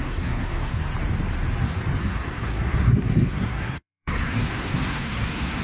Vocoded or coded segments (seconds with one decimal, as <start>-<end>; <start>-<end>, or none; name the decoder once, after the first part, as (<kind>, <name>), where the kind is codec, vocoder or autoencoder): 0.0-0.8 (codec, SNAC); 2.0-5.6